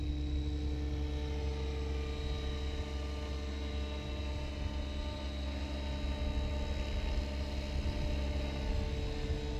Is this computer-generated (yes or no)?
no